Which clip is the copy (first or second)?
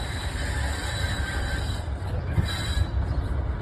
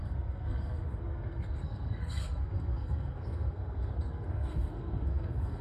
second